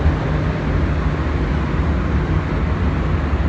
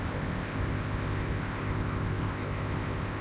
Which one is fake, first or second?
second